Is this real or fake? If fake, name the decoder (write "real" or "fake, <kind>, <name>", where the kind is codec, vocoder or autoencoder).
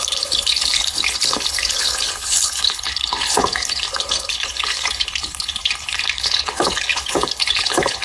fake, codec, HILCodec